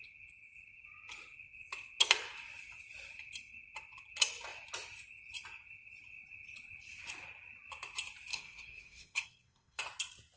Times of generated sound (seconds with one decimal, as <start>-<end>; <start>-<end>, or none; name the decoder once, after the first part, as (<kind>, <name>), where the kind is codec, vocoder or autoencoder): 8.3-9.8 (codec, SNAC)